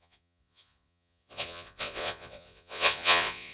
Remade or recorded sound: remade